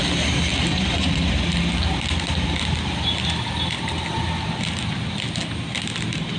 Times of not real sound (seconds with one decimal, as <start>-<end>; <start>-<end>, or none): 0.7-1.3